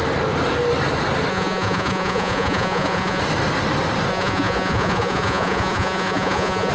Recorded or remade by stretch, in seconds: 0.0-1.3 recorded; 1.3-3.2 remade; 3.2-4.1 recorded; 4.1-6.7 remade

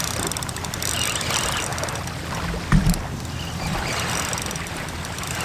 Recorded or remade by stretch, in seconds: 0.0-5.4 recorded

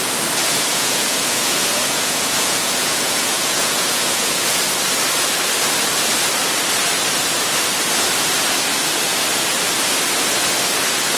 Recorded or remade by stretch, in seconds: 0.0-0.7 recorded; 0.7-4.6 remade; 4.6-11.2 recorded

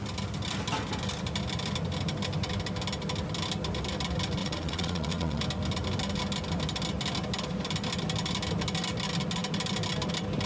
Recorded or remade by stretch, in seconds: 0.0-4.4 recorded; 4.4-5.4 remade; 5.4-10.5 recorded

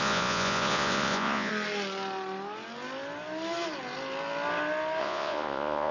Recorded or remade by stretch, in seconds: 0.0-1.5 remade; 1.5-5.0 recorded; 5.0-5.9 remade

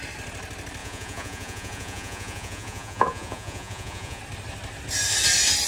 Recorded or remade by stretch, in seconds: 0.0-0.8 recorded; 0.8-4.2 remade; 4.2-5.7 recorded

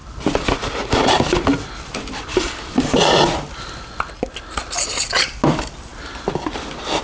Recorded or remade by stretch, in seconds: 0.0-7.0 recorded

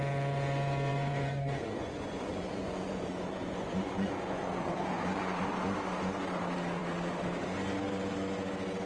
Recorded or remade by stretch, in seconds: 0.0-0.9 recorded; 0.9-5.4 remade; 5.4-8.9 recorded